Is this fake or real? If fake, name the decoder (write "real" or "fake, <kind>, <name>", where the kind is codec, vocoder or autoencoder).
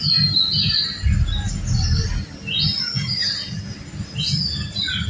real